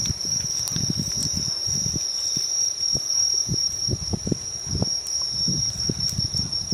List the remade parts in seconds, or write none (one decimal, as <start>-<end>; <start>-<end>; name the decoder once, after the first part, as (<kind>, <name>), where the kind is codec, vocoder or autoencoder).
0.0-6.7 (vocoder, BigVGAN v2)